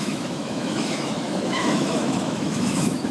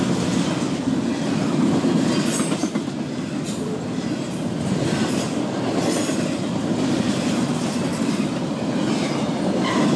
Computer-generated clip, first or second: first